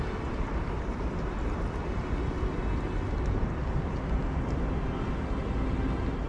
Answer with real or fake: real